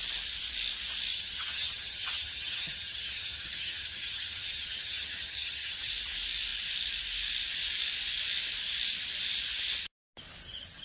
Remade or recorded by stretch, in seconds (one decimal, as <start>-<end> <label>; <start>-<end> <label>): 0.0-1.1 recorded; 1.1-5.9 remade; 5.9-10.8 recorded